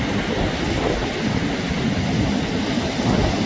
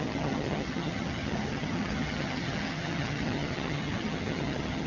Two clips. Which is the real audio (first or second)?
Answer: first